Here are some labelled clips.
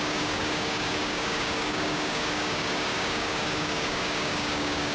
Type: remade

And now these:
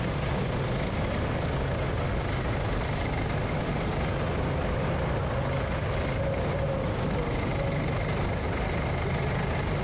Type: recorded